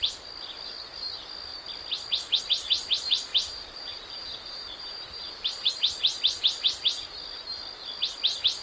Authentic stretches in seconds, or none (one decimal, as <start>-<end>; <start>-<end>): 0.0-3.3; 5.7-8.6